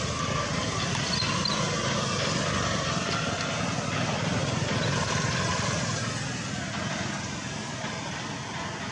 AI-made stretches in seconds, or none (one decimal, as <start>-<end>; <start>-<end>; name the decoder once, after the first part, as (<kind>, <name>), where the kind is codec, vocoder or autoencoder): 4.4-6.1 (vocoder, BigVGAN v2)